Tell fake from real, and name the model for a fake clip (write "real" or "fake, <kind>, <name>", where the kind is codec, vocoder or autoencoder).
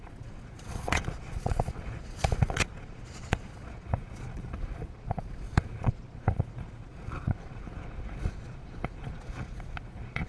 fake, vocoder, Vocos